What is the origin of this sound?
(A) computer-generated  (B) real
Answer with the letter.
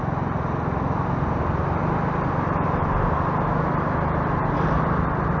B